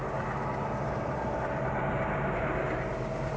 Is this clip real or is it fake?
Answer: real